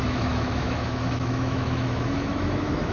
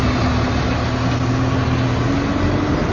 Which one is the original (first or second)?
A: second